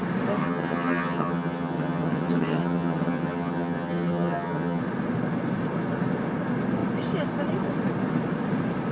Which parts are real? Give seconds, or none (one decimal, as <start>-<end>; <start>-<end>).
0.0-0.4; 4.8-8.9